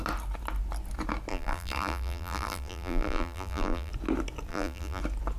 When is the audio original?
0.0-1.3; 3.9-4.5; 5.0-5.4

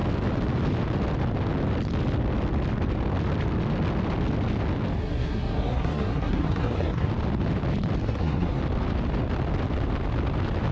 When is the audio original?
0.0-5.0; 7.1-8.0; 8.6-10.7